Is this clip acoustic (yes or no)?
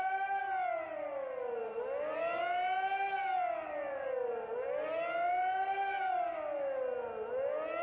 yes